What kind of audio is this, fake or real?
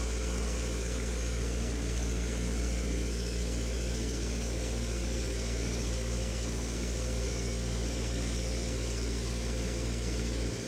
fake